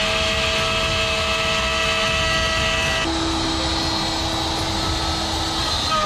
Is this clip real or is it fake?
real